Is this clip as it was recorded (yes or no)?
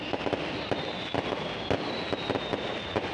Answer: yes